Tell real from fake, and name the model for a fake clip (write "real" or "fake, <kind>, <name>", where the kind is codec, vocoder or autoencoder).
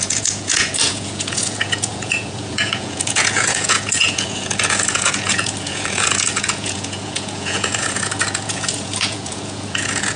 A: fake, vocoder, Vocos